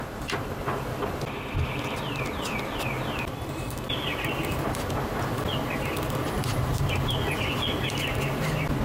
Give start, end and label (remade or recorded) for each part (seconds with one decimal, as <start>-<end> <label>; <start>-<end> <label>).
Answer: 0.0-6.5 recorded; 6.5-7.5 remade; 7.5-8.8 recorded